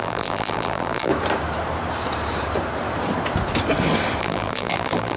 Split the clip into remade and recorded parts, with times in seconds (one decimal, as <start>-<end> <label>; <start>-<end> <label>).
0.0-1.1 remade; 1.1-4.2 recorded; 4.2-5.2 remade